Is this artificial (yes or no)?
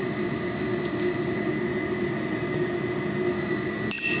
no